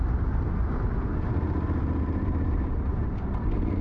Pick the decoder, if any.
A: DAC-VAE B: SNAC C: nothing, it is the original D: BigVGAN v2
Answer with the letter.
C